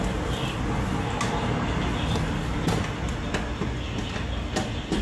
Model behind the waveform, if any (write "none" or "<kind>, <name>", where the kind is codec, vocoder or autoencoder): none